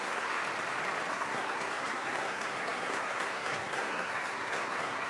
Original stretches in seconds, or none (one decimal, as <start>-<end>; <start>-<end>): 0.4-1.1